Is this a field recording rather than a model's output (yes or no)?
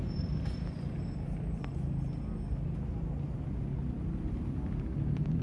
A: yes